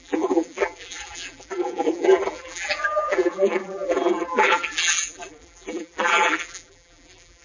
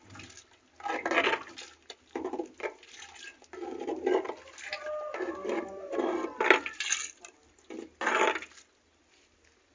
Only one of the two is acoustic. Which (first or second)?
second